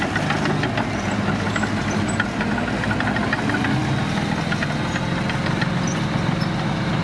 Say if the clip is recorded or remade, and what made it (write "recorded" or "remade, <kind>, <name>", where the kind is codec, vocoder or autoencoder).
recorded